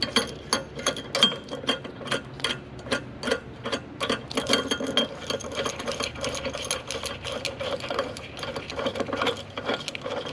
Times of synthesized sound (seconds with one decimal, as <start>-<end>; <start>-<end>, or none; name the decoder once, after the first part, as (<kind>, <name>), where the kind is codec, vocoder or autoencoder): none